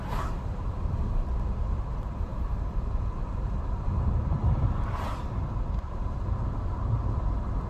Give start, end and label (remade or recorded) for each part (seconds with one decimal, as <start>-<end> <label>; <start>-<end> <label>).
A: 0.0-7.7 recorded